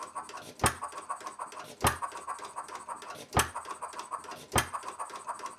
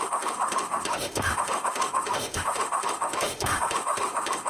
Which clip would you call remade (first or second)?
second